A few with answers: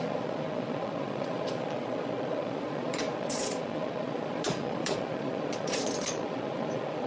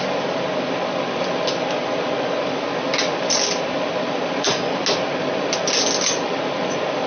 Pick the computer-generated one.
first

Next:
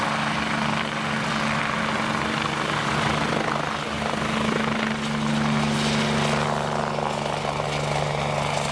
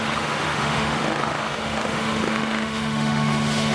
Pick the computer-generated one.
second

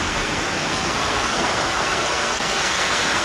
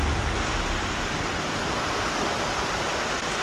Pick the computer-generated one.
first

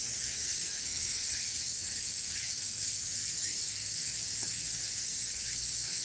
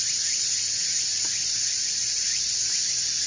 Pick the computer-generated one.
first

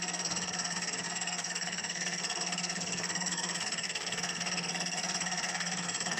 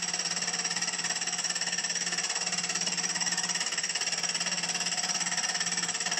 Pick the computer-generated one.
first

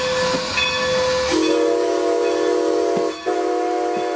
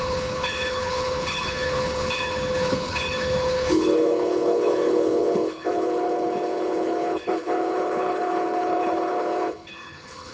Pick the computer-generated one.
second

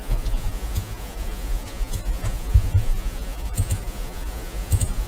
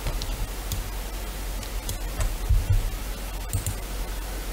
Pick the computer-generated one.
first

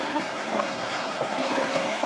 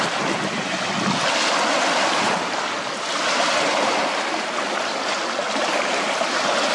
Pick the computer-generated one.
first